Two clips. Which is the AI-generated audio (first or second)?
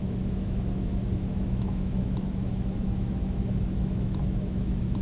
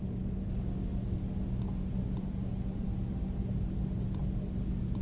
first